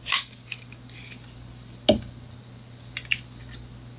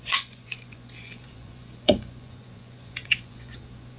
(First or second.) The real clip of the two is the first